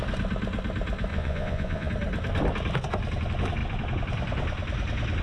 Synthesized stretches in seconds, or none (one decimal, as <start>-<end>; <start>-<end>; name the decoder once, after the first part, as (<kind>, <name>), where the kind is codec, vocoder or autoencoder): 1.1-1.9 (vocoder, Vocos)